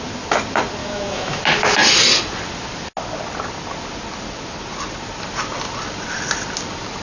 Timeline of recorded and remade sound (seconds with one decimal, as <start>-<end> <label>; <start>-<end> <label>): 0.0-0.8 recorded; 0.8-1.4 remade; 1.4-7.0 recorded